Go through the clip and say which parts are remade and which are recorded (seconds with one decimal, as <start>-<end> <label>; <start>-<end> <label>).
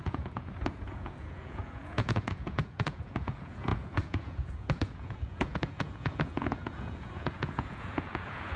0.0-8.6 remade